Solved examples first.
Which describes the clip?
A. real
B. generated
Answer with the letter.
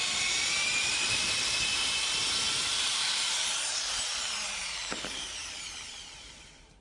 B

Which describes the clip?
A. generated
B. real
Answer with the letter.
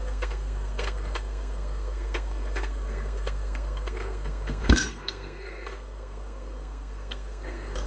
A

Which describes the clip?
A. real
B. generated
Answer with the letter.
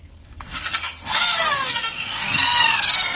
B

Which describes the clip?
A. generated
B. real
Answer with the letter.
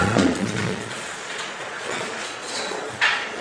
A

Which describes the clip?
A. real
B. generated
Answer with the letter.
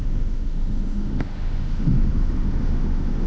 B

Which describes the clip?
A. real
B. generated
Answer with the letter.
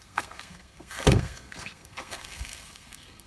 B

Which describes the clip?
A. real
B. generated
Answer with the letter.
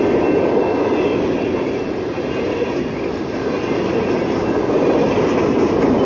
A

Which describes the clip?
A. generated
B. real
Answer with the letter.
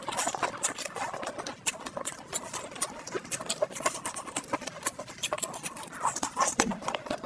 B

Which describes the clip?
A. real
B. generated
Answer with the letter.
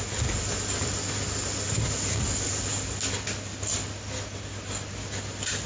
A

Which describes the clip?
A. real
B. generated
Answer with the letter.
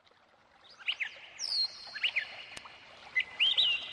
A